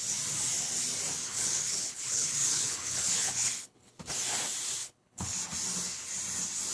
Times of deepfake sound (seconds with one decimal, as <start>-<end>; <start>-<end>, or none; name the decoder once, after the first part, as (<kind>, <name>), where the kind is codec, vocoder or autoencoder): 1.2-3.9 (codec, HILCodec); 4.8-5.4